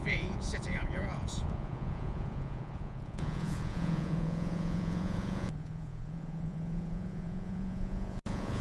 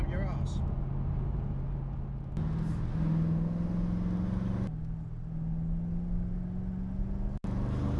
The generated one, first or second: first